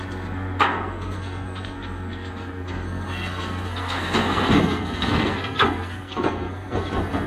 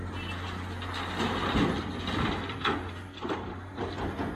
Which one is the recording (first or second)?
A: second